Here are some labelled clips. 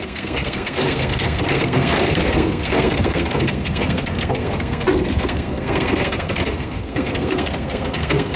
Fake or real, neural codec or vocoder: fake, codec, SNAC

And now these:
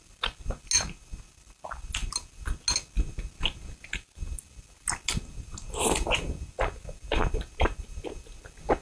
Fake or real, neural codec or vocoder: real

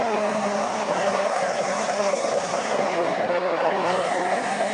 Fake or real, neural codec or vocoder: fake, codec, SNAC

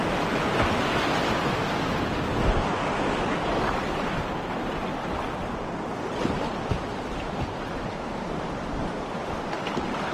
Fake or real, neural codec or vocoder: real